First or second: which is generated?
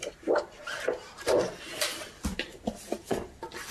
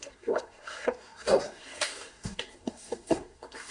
second